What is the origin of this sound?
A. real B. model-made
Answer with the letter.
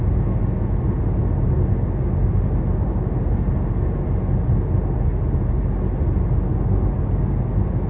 A